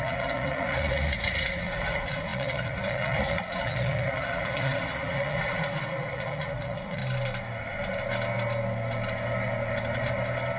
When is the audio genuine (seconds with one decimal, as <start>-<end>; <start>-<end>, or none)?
7.0-10.6